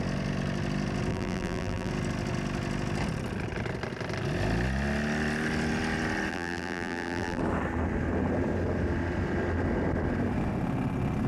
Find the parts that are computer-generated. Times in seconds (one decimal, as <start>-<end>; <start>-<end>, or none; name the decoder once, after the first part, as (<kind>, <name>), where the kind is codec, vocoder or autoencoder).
1.1-1.9 (vocoder, BigVGAN v2); 6.3-7.4